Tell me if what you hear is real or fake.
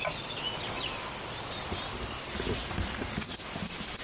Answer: real